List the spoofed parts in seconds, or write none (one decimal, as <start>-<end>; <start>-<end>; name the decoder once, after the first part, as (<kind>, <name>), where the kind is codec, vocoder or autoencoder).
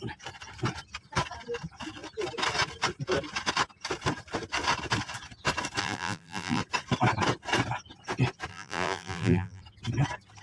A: 5.8-6.6 (vocoder, BigVGAN v2); 8.5-9.6